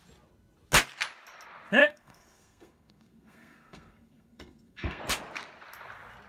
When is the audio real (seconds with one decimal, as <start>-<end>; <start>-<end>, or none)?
0.0-1.8; 5.0-6.3